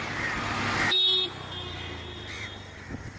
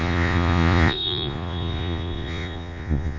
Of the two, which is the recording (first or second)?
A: first